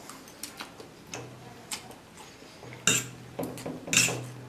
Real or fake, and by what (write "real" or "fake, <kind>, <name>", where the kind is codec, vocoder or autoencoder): real